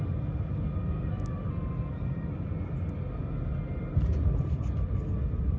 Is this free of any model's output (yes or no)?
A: yes